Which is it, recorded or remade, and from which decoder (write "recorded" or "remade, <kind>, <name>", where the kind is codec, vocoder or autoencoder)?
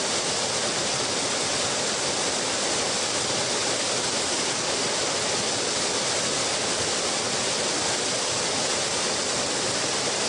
recorded